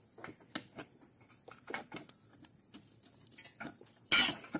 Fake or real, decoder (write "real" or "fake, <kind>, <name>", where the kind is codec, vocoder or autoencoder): real